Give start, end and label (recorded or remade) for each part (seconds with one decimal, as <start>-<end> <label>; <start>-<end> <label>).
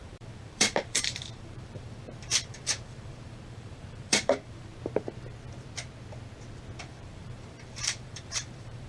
0.0-4.7 remade; 4.7-6.8 recorded; 6.8-8.9 remade